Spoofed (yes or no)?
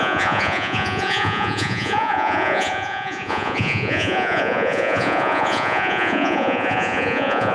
yes